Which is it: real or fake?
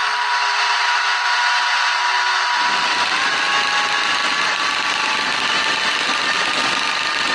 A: real